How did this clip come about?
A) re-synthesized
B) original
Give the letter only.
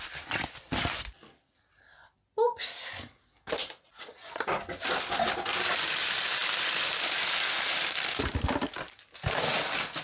B